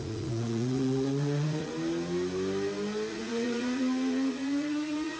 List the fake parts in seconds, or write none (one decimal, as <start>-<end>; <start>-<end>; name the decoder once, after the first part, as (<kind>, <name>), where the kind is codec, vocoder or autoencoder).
0.0-1.7 (vocoder, Vocos); 3.1-5.2